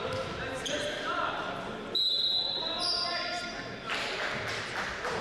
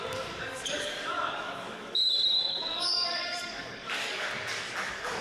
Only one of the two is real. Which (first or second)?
first